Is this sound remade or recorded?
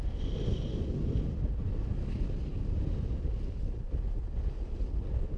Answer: recorded